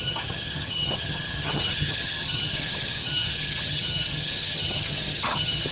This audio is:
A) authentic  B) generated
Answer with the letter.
B